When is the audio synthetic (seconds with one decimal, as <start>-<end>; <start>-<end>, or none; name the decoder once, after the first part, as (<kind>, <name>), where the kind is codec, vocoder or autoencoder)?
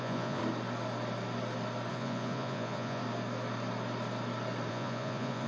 0.0-0.4 (vocoder, Vocos); 1.9-3.0; 4.7-5.5